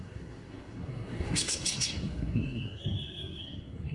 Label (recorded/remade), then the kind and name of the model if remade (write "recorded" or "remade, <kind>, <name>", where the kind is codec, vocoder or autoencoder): remade, codec, SNAC